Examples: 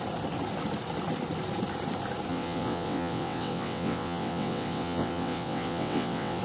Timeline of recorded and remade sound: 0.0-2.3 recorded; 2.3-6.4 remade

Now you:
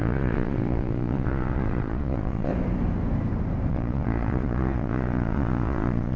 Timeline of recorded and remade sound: 0.0-2.5 remade; 2.5-3.7 recorded; 3.7-6.2 remade